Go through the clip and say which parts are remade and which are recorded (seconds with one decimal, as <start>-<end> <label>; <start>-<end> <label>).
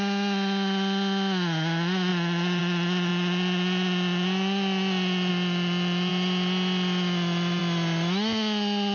0.0-8.9 recorded